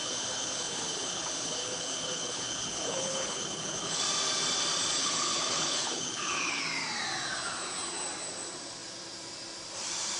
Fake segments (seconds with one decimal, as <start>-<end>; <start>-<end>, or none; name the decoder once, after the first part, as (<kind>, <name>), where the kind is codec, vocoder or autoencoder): 0.0-4.0 (codec, HILCodec); 5.0-6.6